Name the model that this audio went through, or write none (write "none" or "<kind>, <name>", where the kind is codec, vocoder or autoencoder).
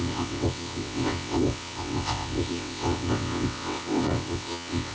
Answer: vocoder, WaveNeXt